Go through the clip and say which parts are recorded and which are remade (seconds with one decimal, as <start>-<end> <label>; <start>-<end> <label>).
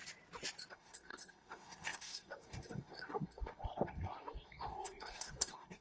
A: 0.0-0.7 recorded; 0.7-5.8 remade